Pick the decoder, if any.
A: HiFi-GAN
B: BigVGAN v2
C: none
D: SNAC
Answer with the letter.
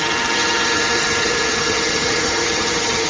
A